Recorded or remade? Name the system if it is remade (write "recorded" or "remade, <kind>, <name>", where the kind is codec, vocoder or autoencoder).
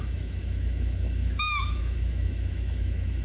remade, autoencoder, DAC-VAE